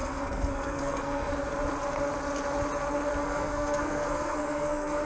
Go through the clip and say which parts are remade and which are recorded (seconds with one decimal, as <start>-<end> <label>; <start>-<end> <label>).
0.0-1.3 remade; 1.3-3.2 recorded; 3.2-5.1 remade